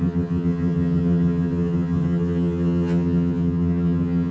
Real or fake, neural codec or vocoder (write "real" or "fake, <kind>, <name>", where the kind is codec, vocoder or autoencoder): fake, vocoder, HiFi-GAN